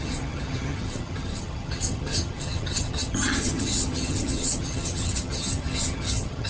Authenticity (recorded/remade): remade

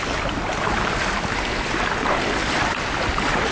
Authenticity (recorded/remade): recorded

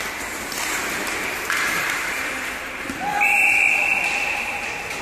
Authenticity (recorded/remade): remade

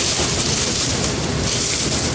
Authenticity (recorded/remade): remade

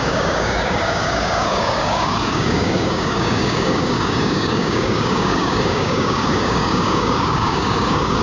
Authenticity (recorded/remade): remade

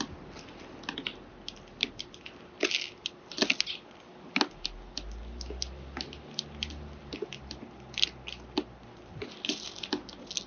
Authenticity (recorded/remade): recorded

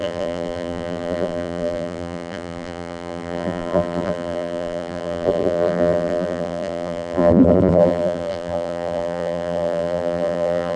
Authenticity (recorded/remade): remade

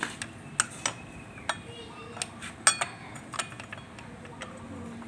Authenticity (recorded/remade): recorded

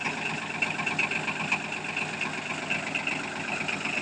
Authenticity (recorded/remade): recorded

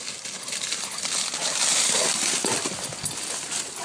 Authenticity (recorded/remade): recorded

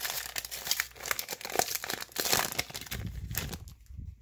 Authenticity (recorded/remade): recorded